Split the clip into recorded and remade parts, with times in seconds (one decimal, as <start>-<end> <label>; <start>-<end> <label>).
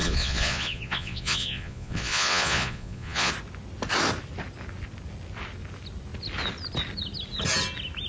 0.0-3.3 remade; 3.3-8.1 recorded